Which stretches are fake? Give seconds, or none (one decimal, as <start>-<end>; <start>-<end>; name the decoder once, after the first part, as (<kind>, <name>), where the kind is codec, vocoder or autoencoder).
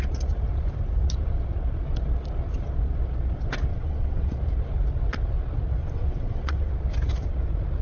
3.7-4.4 (vocoder, WaveNeXt); 5.8-6.7